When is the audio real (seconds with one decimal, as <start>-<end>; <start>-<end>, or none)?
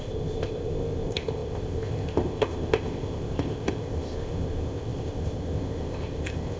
none